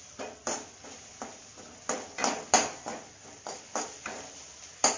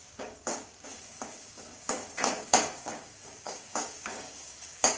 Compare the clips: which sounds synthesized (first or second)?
second